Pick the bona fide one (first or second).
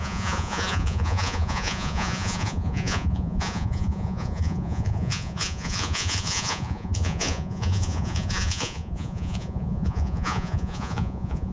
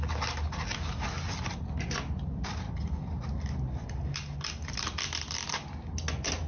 second